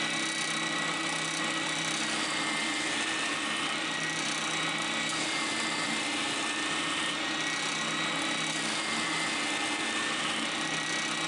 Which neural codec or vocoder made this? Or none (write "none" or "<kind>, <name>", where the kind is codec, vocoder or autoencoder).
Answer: none